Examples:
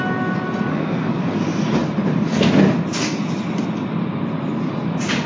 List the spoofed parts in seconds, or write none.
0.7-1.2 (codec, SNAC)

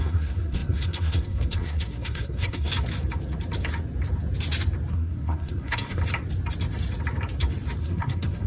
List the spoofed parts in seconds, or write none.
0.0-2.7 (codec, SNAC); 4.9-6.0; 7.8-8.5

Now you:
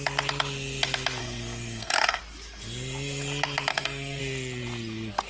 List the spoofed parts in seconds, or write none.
1.2-2.2 (codec, SNAC); 3.7-4.2

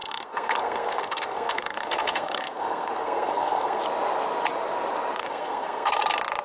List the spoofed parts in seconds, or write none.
0.0-3.8 (codec, SNAC); 5.2-6.0

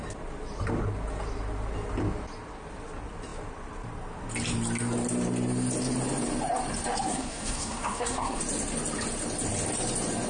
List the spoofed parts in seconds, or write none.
7.1-8.4 (codec, SNAC)

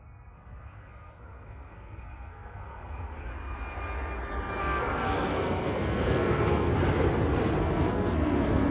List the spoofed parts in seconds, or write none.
0.0-3.3 (codec, SNAC); 4.6-6.7; 7.6-8.7